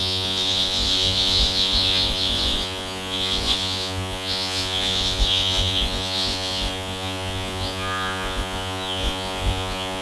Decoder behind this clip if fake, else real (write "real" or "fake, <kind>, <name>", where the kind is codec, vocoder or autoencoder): fake, vocoder, Vocos